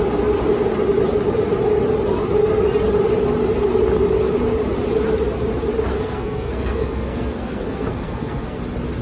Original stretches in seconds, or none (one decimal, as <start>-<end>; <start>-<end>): 0.0-5.9; 8.6-9.0